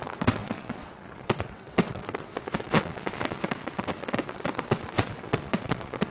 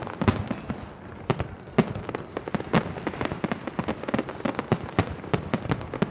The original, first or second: second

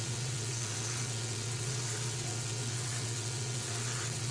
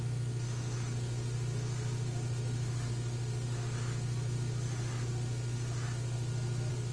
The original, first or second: second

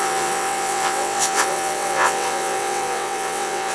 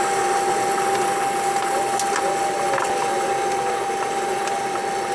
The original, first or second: second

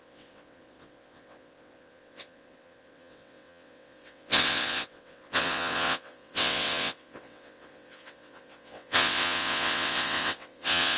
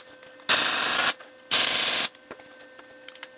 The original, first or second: second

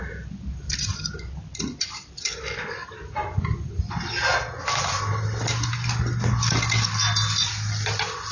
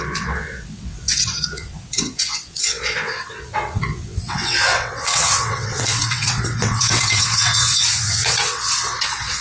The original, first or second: first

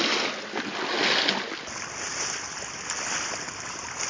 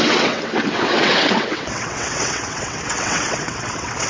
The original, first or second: first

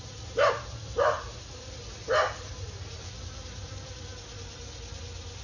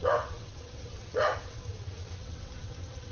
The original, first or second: first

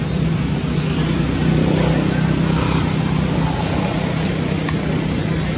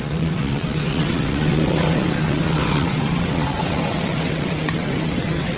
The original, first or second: first